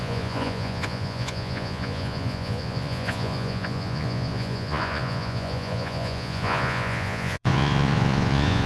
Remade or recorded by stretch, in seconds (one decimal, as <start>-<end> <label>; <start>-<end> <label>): 0.0-8.7 remade